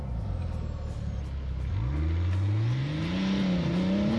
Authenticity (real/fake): real